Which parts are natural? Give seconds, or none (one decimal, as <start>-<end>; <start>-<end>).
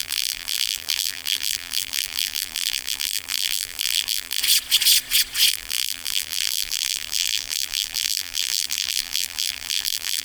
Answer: 4.4-5.5